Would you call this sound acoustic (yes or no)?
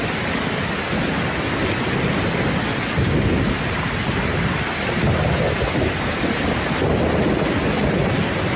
yes